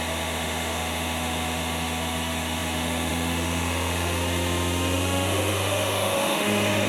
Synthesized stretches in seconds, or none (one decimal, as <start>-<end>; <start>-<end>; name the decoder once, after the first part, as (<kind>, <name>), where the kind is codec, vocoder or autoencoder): 0.0-6.9 (autoencoder, DAC-VAE)